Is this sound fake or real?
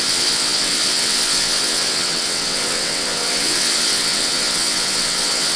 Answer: fake